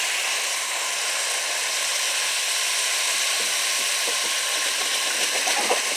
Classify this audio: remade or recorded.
recorded